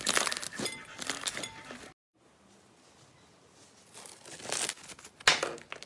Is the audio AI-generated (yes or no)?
no